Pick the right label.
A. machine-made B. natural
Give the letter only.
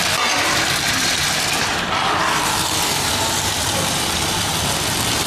A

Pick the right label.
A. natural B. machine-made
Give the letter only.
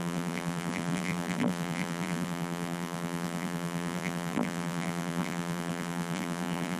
B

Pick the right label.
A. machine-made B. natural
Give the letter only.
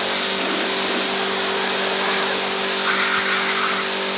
B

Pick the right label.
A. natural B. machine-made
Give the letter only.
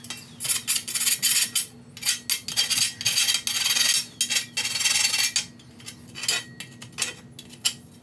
A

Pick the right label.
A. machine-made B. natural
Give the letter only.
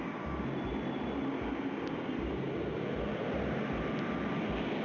B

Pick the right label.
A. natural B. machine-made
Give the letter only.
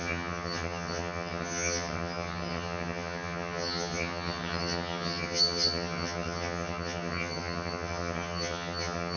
B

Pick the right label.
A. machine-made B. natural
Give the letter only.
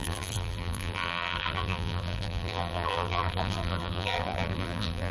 A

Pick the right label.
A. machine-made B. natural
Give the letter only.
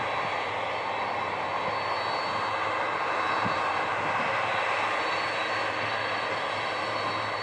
B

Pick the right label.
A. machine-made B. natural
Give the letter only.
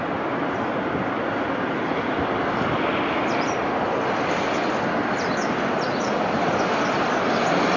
B